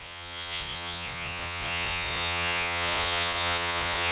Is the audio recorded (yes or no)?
no